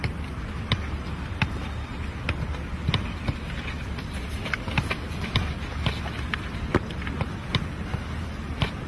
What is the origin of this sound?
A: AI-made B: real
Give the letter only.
B